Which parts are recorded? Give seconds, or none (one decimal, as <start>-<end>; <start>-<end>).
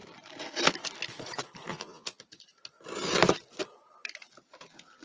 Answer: 0.0-1.7; 2.2-5.0